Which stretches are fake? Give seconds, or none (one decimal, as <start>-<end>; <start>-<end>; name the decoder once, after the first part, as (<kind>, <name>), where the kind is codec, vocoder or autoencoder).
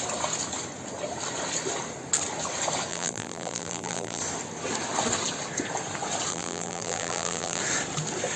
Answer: 2.9-4.2 (vocoder, BigVGAN v2); 6.3-7.6